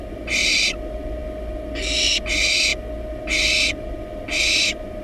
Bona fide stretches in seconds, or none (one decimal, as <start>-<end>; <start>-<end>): 0.0-5.0